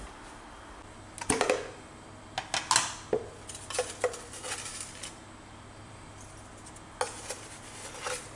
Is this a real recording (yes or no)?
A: yes